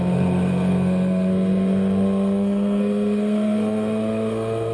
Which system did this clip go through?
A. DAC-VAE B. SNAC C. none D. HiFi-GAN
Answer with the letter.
B